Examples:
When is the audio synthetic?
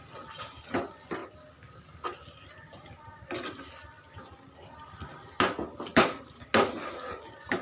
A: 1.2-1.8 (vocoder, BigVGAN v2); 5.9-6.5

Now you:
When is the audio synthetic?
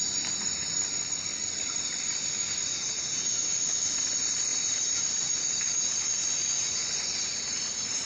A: 6.8-7.3 (vocoder, Vocos)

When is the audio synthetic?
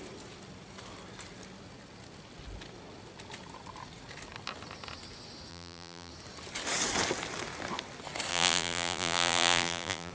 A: 5.5-6.1 (vocoder, BigVGAN v2); 8.3-10.1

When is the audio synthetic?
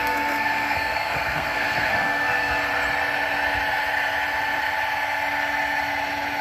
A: 0.0-2.6 (codec, SNAC)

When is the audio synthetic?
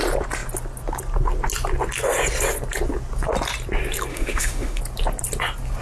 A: 4.1-4.8 (autoencoder, DAC-VAE)